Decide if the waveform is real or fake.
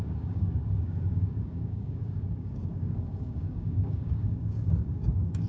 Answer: fake